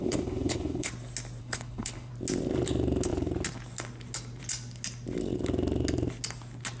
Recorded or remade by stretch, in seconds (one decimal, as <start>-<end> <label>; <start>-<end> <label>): 0.0-0.9 remade; 0.9-1.4 recorded; 1.4-2.1 remade; 2.1-6.8 recorded